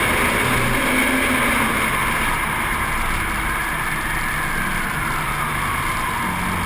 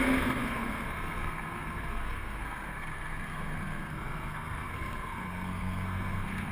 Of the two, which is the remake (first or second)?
second